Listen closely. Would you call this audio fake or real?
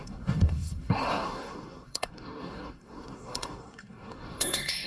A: fake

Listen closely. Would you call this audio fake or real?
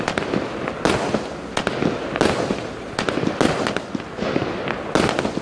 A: real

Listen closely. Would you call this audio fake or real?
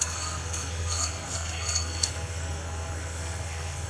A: fake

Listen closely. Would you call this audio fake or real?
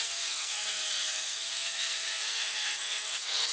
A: fake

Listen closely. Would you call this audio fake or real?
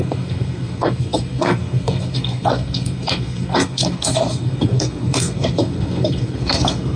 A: fake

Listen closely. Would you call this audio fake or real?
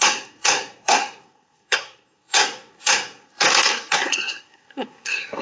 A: fake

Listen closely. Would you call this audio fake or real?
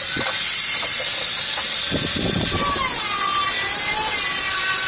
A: real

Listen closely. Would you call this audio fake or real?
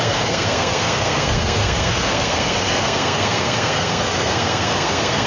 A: fake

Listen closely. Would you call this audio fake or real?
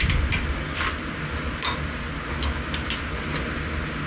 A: real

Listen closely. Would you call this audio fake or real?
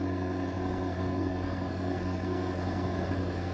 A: fake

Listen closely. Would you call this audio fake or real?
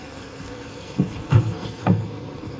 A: fake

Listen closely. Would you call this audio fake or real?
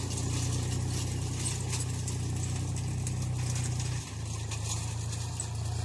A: real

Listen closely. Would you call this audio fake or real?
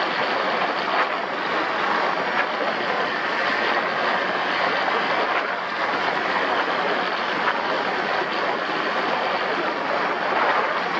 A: real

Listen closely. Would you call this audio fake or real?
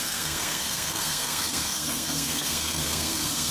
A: fake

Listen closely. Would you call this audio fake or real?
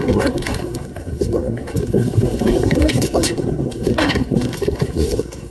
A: fake